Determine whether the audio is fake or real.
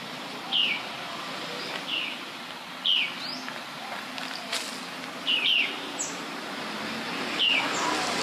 real